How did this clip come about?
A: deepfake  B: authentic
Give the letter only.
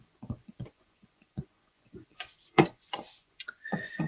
A